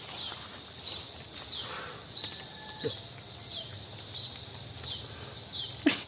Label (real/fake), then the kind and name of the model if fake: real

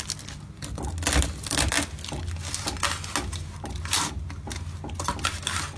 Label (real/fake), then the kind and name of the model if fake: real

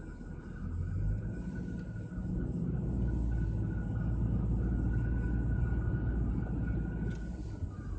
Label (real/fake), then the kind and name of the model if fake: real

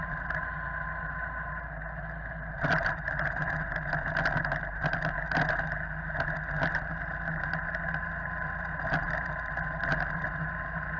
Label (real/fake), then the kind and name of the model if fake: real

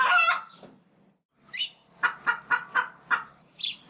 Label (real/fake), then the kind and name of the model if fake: real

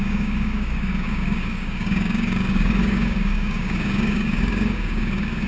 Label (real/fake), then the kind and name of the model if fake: fake, codec, DAC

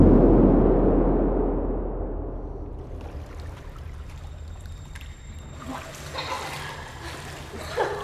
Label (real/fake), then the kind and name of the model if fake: real